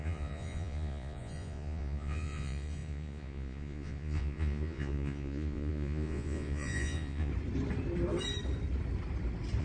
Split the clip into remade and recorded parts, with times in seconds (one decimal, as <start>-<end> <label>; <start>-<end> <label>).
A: 0.0-7.3 remade; 7.3-9.6 recorded